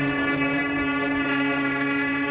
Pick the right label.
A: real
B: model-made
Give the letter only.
A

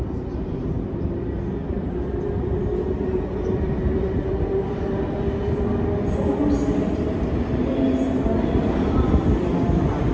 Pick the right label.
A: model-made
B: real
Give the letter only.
B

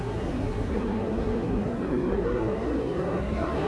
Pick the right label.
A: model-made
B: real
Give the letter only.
A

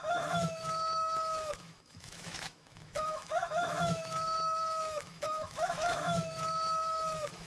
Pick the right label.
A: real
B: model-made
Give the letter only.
B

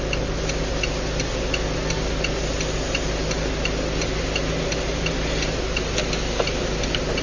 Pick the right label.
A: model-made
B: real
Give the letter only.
B